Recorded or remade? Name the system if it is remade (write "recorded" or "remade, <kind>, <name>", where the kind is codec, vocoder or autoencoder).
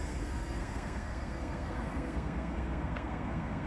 remade, codec, SNAC